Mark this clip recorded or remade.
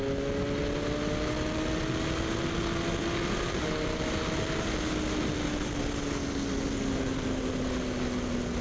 recorded